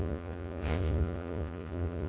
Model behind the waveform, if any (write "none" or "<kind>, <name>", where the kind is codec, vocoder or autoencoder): vocoder, Vocos